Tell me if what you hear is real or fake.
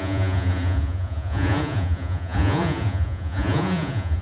fake